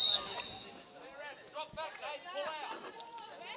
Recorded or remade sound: recorded